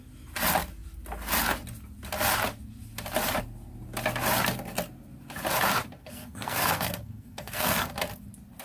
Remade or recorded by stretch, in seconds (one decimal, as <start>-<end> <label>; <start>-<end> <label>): 0.0-6.0 recorded; 6.0-7.9 remade; 7.9-8.6 recorded